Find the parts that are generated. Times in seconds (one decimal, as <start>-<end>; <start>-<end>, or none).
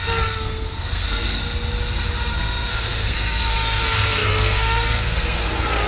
0.0-1.4; 2.2-5.9